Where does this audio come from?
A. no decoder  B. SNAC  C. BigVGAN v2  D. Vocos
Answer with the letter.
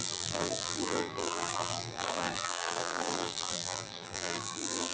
C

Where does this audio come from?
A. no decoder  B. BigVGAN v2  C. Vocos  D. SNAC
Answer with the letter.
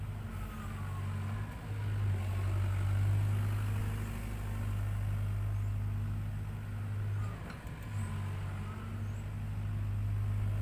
A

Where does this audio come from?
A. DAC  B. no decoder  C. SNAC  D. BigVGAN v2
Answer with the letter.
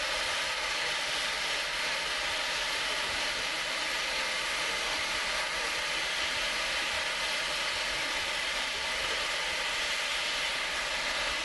B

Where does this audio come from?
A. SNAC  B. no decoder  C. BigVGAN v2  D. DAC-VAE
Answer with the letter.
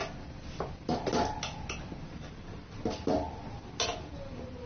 B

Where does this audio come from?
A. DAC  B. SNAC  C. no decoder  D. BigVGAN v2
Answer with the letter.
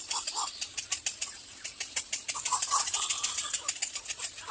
D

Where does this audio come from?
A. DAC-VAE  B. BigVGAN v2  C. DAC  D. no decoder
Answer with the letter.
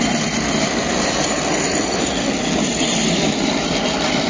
B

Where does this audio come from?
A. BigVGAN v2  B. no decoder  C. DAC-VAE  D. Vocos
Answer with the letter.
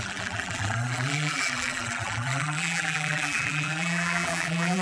A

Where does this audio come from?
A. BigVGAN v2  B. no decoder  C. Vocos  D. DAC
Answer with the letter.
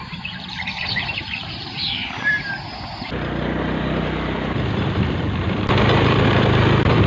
A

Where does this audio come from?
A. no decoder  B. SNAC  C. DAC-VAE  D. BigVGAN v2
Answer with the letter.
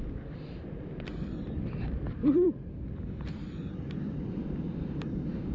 D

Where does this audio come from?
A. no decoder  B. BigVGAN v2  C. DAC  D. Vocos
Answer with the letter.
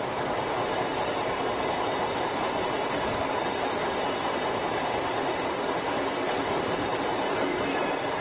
B